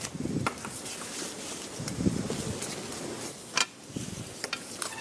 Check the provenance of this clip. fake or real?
real